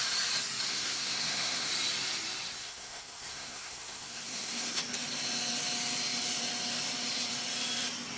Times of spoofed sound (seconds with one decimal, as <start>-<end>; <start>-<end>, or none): 0.7-1.7; 2.6-4.8